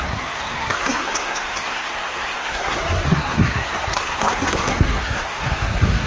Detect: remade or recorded remade